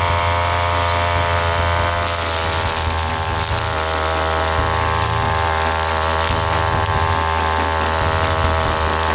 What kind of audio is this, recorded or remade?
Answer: recorded